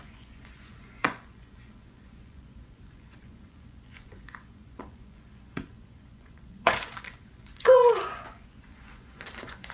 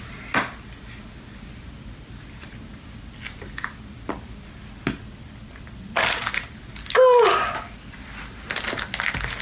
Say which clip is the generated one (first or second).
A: first